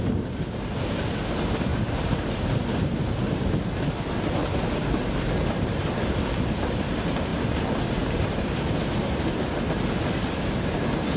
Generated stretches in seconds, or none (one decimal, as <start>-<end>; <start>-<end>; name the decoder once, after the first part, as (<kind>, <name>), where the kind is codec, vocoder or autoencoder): 1.7-3.4 (vocoder, BigVGAN v2); 4.5-5.9